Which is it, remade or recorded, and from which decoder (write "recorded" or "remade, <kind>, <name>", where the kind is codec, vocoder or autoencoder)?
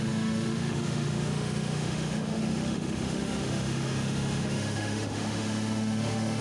remade, autoencoder, DAC-VAE